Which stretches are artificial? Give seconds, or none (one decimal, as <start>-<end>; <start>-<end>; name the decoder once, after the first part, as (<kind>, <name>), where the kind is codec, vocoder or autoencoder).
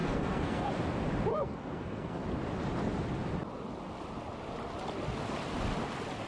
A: 0.0-0.7 (codec, SNAC); 1.3-2.2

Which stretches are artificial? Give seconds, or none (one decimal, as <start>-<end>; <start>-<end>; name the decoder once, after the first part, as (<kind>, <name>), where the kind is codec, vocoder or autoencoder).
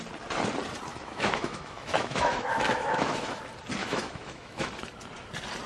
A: 0.9-3.4 (autoencoder, DAC-VAE); 3.8-4.7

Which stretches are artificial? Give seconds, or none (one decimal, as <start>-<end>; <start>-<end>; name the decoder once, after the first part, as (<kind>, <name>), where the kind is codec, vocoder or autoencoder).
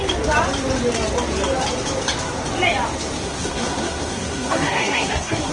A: 3.2-5.5 (codec, SNAC)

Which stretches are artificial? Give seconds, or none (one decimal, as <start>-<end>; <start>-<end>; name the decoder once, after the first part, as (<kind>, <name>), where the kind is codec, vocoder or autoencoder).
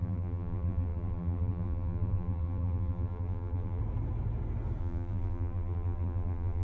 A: 0.0-3.8 (vocoder, BigVGAN v2); 4.8-6.6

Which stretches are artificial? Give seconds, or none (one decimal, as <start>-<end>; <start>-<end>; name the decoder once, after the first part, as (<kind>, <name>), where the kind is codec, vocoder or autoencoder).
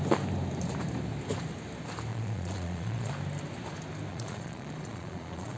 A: 2.1-3.1 (vocoder, Vocos); 4.1-5.6